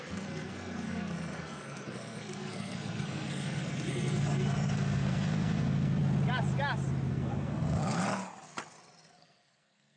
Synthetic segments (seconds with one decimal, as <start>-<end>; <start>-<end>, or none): 0.0-6.0; 7.1-8.0; 9.1-10.0